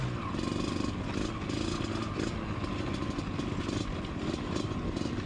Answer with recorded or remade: recorded